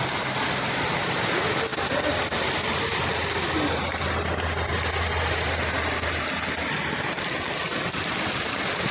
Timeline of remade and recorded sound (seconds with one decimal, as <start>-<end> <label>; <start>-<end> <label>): 0.0-8.9 recorded